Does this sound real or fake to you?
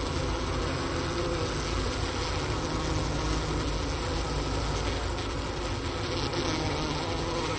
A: real